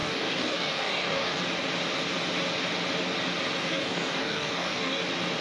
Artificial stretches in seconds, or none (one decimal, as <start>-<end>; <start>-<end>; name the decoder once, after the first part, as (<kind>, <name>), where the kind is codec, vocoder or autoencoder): 0.0-1.4 (codec, DAC); 3.6-5.0